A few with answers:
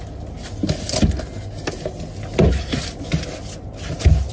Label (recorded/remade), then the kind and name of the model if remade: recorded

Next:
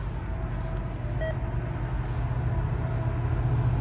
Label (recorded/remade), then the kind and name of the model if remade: recorded